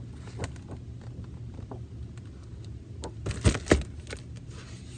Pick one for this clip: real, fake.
real